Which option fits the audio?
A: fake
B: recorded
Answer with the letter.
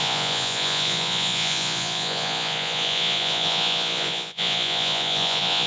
A